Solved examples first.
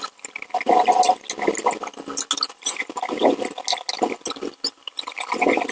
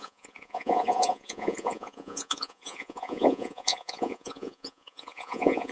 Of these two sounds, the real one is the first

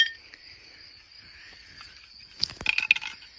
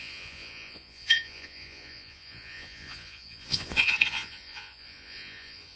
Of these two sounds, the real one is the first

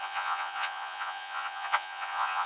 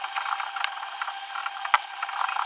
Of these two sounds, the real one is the second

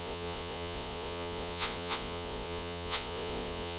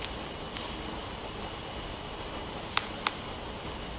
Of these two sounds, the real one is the second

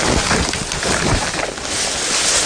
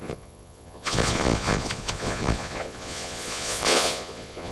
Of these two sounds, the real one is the first